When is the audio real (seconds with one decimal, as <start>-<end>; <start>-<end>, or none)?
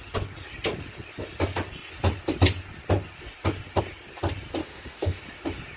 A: 0.0-4.6; 5.2-5.8